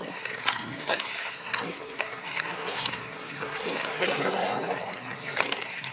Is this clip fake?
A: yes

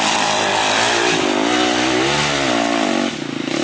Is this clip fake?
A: no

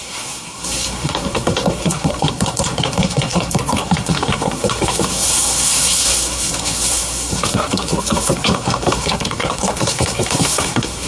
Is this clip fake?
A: yes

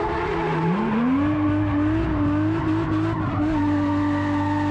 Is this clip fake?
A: no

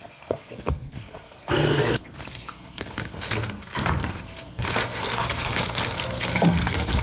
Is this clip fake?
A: yes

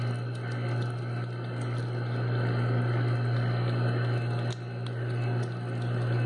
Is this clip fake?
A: no